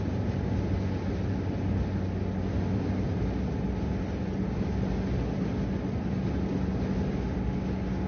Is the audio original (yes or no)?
yes